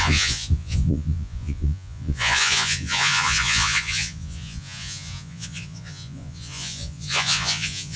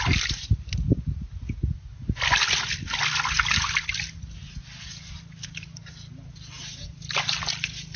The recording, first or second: second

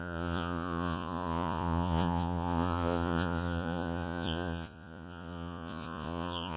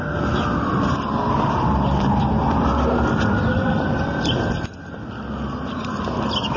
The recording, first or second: second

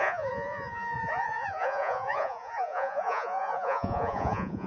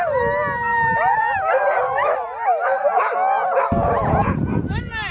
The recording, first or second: second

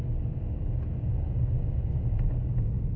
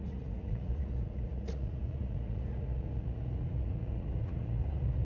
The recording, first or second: first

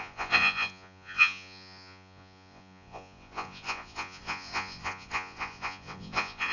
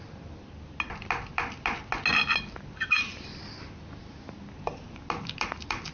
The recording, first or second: second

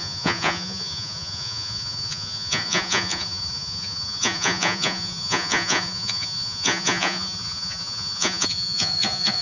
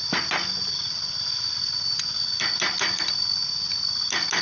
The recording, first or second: second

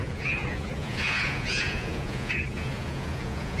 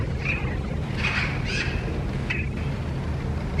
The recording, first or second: second